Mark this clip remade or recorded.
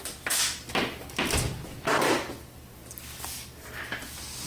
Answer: recorded